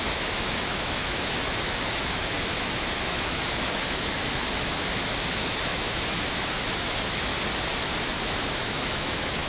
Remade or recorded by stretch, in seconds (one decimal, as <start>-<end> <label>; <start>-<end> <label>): 0.0-7.3 remade; 7.3-8.0 recorded; 8.0-9.5 remade